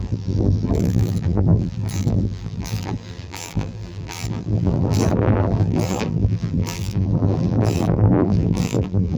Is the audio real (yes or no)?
no